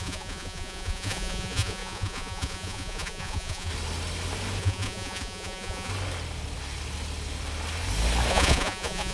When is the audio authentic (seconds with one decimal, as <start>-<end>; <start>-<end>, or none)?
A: 3.7-4.6; 5.9-8.3